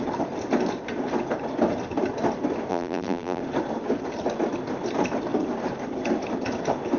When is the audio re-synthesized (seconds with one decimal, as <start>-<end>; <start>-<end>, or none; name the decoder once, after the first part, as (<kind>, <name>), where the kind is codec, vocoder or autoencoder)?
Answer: 2.7-3.4 (vocoder, BigVGAN v2)